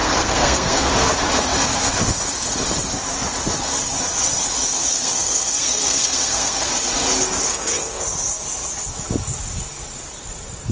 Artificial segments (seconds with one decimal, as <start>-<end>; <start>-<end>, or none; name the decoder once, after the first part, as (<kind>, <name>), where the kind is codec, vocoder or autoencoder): 0.0-0.9 (codec, SNAC); 4.6-6.7; 7.5-8.0